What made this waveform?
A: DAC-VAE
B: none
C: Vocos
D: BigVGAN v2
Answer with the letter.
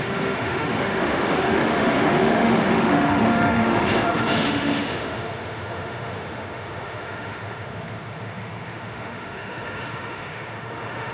A